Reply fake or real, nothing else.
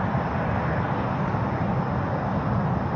real